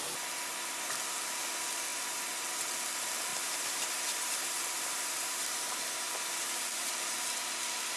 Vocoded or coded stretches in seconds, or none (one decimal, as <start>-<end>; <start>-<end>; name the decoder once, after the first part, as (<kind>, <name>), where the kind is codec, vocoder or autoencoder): 3.3-6.9 (vocoder, BigVGAN v2)

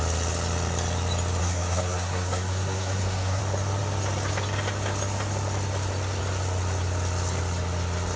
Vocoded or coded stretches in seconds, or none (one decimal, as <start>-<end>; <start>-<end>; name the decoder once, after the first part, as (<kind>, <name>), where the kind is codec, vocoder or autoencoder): 1.4-3.4 (codec, SNAC)

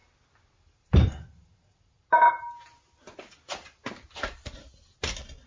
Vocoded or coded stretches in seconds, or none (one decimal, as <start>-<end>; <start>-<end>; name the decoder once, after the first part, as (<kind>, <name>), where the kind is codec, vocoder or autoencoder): none

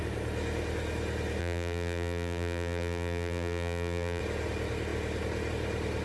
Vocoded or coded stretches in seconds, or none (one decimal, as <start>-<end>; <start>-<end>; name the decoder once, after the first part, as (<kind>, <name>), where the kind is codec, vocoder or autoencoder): 1.4-4.2 (vocoder, BigVGAN v2)

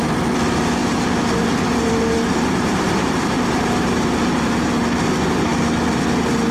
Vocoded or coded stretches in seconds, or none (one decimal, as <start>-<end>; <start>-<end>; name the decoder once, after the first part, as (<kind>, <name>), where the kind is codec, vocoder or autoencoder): 0.8-4.7 (vocoder, BigVGAN v2)

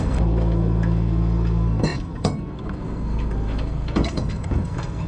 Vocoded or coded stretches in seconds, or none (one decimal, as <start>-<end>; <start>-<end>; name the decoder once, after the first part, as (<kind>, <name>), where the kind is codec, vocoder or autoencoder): 0.0-5.1 (codec, SNAC)

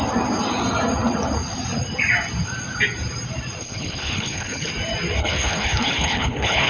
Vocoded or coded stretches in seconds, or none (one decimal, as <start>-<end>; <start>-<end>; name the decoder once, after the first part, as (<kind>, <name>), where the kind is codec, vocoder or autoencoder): 3.6-4.7 (codec, HILCodec); 5.2-6.7